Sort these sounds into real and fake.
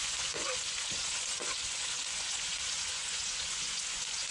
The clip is fake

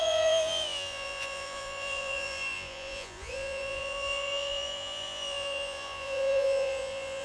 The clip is fake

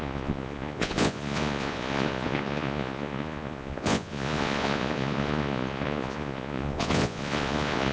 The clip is fake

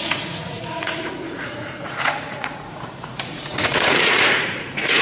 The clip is fake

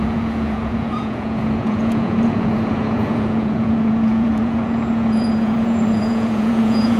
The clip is fake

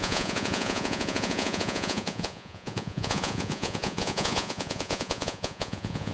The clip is fake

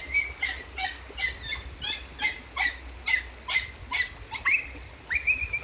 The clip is real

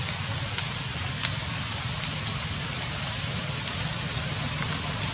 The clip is real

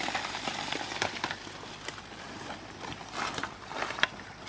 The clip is real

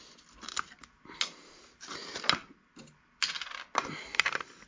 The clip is real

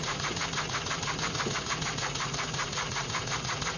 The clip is fake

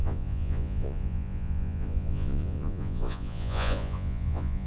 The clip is fake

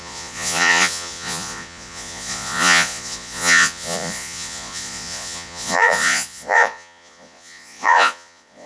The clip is fake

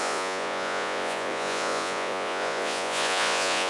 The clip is fake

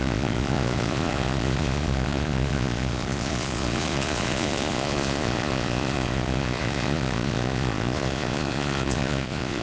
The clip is fake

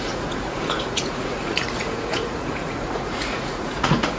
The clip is fake